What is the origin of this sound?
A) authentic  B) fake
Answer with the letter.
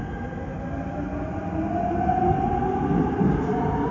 A